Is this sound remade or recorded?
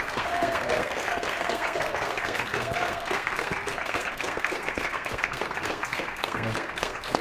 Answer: remade